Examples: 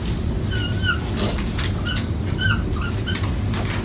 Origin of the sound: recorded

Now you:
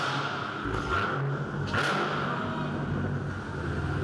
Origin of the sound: recorded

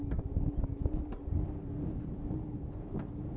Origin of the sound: recorded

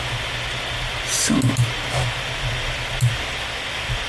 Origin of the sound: recorded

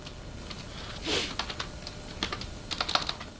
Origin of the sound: recorded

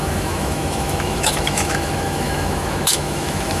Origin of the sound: remade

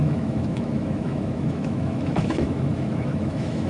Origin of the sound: remade